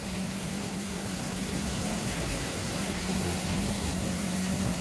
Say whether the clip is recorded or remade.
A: remade